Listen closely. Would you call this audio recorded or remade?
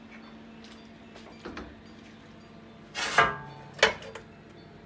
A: recorded